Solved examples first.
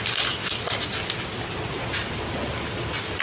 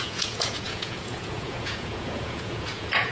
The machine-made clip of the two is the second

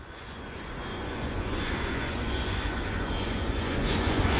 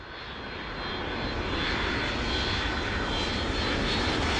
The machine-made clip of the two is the first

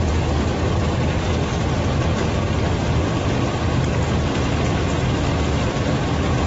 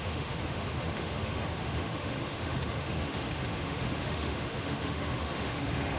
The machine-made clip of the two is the second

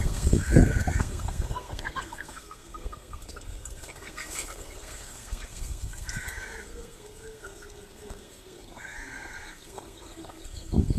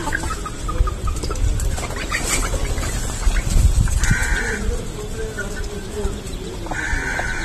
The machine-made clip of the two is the first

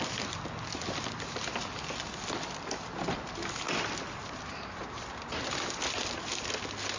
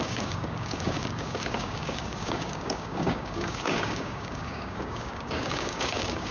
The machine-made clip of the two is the second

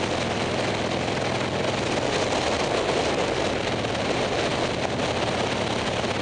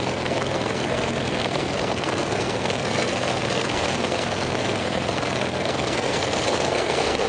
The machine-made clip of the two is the second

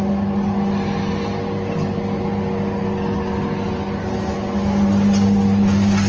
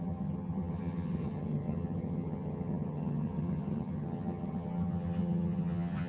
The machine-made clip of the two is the second